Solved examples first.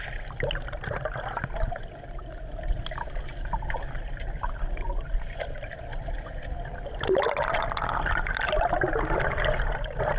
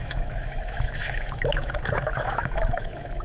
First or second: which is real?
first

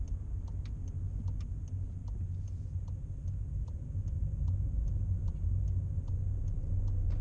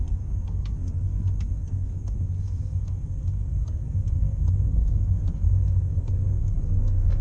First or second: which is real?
first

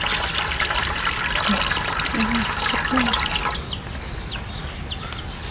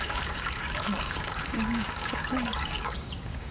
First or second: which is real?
first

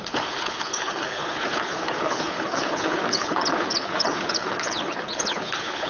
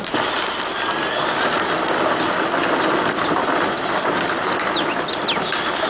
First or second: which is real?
second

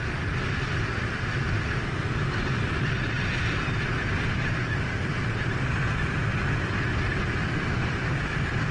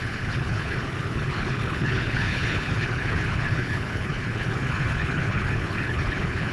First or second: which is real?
first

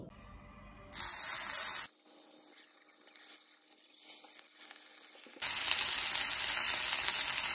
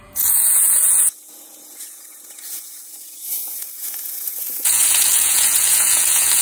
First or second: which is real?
first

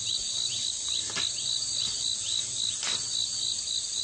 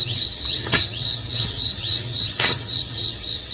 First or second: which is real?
first